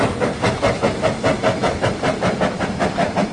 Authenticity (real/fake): real